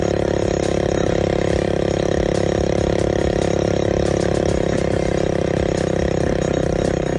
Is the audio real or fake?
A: real